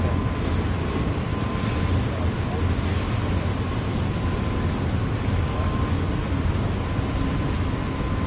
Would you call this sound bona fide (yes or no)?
yes